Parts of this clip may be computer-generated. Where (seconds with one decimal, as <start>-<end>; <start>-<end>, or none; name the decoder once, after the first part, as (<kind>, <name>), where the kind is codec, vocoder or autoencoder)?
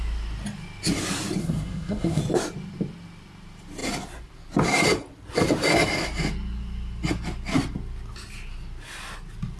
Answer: 1.4-2.2 (codec, SNAC)